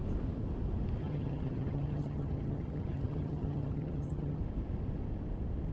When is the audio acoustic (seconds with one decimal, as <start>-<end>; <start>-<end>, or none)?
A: 0.0-1.0; 4.4-5.7